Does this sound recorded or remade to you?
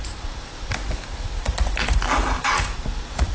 recorded